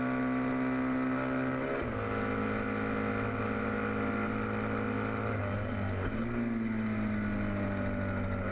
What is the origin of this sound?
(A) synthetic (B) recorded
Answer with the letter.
B